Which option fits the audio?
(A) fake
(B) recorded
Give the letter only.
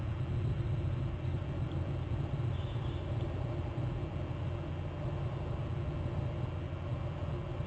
B